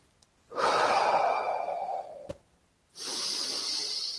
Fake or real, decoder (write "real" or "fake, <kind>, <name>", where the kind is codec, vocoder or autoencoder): real